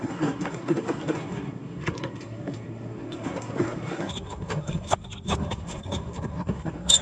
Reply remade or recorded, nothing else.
remade